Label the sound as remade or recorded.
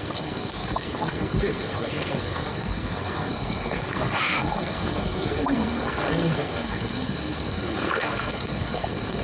remade